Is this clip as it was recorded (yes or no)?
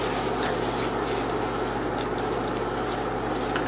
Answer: yes